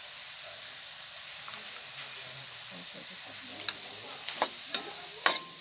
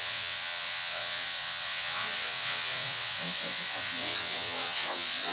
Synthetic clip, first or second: second